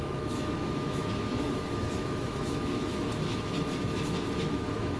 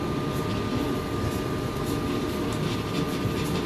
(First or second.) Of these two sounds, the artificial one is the first